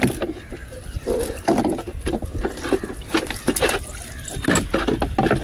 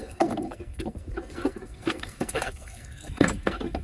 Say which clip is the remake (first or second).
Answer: second